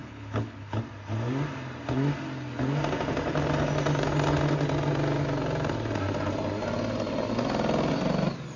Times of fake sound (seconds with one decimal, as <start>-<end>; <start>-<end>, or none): 0.0-0.8